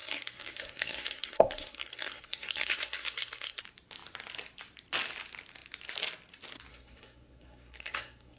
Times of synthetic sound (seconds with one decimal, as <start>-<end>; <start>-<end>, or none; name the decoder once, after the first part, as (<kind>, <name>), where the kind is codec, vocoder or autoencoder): 0.0-3.6 (codec, SNAC); 6.7-8.4